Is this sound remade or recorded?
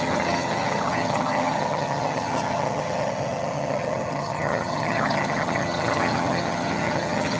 remade